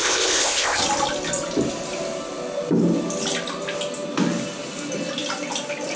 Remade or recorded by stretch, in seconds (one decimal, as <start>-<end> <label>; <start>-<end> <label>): 0.0-0.8 remade; 0.8-6.0 recorded